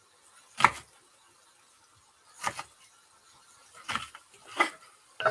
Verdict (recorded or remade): recorded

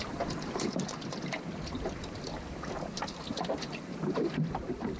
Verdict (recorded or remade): remade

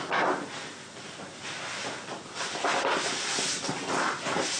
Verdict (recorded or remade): recorded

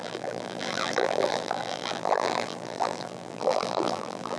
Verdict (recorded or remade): remade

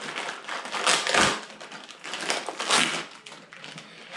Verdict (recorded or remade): recorded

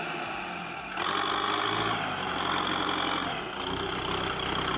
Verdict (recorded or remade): recorded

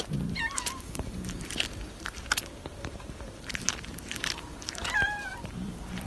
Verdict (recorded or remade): remade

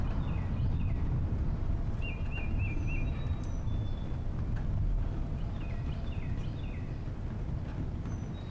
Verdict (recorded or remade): recorded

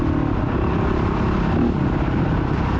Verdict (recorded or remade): recorded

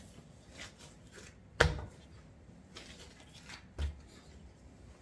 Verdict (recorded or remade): recorded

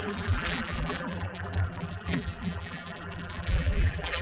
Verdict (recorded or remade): remade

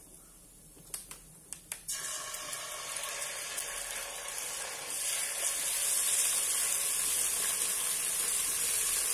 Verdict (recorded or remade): recorded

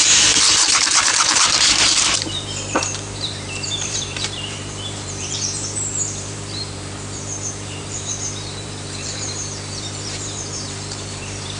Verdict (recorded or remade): remade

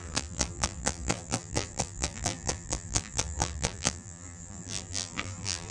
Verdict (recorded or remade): remade